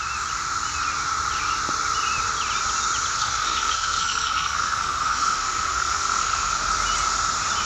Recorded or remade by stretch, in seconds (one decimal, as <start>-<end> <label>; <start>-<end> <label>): 0.0-3.1 recorded; 3.1-6.6 remade; 6.6-7.7 recorded